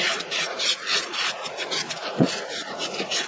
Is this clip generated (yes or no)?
yes